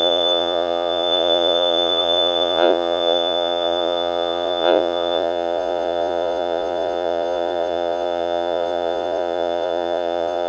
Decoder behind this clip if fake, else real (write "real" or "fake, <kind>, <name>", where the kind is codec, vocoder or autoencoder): fake, vocoder, Vocos